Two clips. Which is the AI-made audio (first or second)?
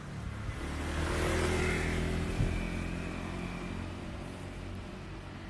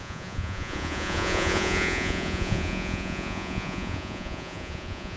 second